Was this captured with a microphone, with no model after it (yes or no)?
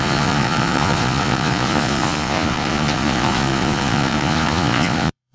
no